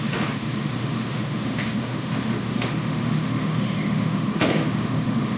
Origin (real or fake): fake